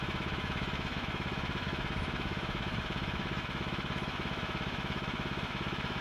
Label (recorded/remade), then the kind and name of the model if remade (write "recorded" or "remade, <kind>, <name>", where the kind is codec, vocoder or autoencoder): remade, autoencoder, DAC-VAE